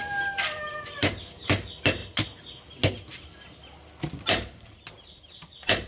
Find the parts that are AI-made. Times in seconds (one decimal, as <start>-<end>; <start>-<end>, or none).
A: none